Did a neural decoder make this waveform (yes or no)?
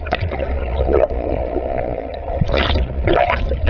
yes